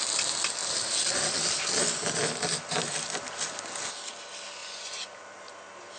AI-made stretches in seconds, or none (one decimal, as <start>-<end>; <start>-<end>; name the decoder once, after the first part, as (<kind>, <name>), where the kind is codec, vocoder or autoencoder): 4.6-5.2 (vocoder, Vocos)